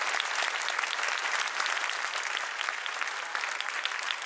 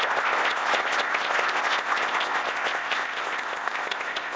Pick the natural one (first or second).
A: first